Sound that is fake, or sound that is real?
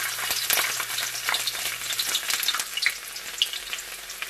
real